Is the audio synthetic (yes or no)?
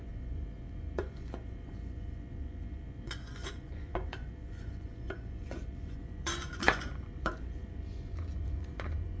yes